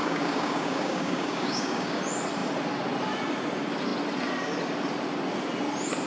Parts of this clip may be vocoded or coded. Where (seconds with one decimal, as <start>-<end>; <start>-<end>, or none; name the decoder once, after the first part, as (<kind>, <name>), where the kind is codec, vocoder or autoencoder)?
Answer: 0.0-2.0 (codec, DAC)